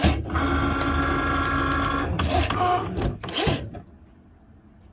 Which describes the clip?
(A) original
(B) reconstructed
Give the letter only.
A